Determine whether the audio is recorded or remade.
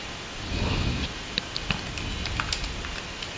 recorded